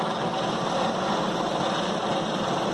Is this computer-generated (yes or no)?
no